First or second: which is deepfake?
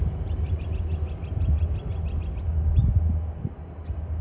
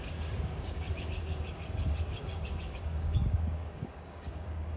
second